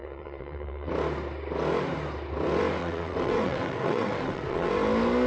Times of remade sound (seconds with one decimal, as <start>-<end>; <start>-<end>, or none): 0.0-0.9; 2.8-4.7